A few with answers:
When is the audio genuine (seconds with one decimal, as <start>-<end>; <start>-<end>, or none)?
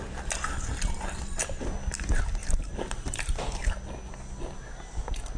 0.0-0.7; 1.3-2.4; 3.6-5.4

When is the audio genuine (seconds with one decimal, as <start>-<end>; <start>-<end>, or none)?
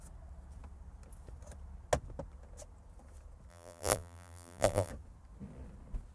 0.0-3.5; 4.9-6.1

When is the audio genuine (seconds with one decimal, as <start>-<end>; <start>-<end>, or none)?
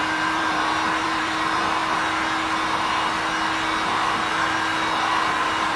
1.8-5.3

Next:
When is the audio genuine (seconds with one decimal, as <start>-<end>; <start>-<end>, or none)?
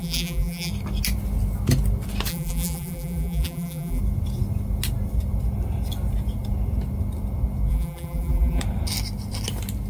0.7-2.3; 4.0-7.7; 8.6-9.9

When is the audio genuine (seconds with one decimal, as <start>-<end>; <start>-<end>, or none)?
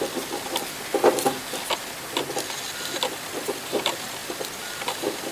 1.4-2.8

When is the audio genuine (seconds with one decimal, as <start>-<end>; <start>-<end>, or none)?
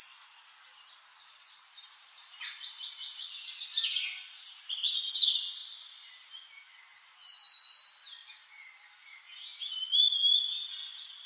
0.0-1.2; 3.5-8.2; 9.7-11.3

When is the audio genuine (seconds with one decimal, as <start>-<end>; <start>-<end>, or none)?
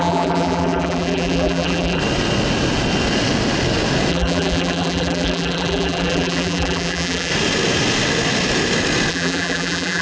2.0-4.1; 7.3-9.1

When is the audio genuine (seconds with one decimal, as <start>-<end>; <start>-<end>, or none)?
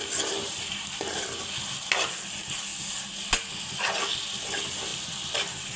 0.0-4.9